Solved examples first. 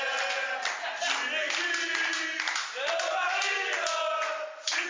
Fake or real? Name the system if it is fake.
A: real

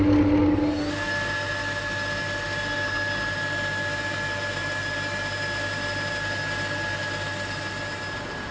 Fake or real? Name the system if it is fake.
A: real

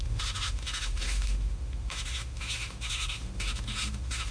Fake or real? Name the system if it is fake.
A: fake, autoencoder, DAC-VAE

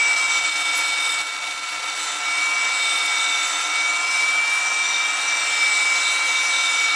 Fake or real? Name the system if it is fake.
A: real